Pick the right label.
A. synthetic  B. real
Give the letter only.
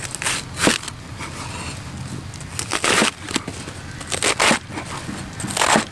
B